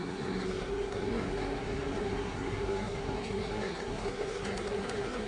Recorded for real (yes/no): no